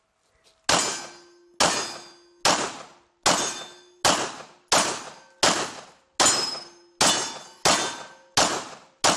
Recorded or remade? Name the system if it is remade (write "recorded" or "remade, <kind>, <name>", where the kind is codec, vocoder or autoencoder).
recorded